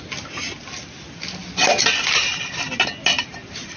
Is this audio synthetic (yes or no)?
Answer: no